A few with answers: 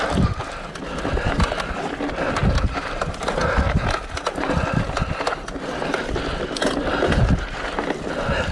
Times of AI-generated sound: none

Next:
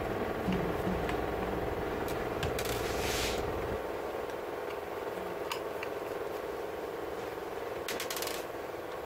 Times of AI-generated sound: none

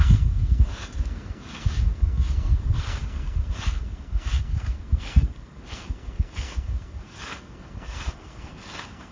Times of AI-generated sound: 0.0-9.1